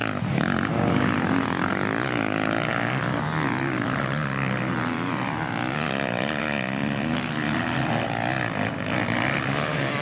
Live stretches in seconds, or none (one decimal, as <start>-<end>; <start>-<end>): 0.0-10.0